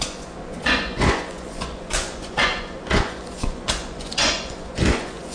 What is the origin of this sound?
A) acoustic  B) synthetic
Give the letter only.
B